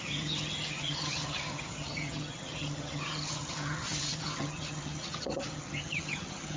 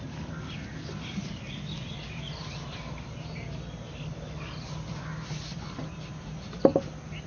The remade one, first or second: first